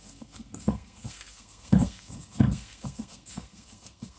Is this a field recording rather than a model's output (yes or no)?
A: no